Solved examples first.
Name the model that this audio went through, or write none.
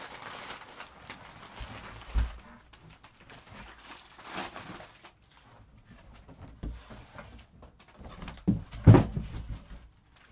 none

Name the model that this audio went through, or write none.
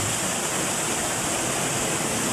none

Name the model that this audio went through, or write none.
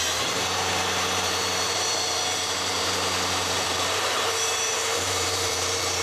vocoder, BigVGAN v2